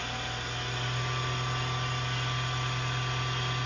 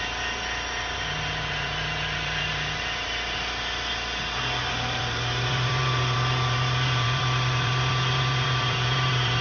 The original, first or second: first